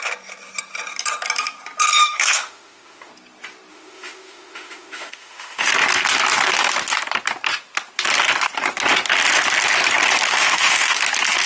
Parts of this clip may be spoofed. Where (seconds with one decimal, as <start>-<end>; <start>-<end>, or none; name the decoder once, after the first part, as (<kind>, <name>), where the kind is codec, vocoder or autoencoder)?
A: 2.0-3.1 (autoencoder, DAC-VAE); 3.7-5.7; 10.3-11.0